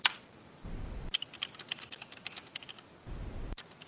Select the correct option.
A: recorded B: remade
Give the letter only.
A